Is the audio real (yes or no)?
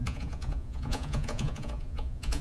no